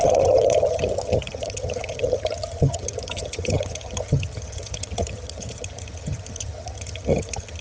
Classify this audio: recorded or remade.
remade